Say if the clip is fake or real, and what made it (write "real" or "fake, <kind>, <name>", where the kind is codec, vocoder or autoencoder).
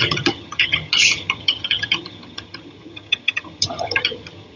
fake, vocoder, HiFi-GAN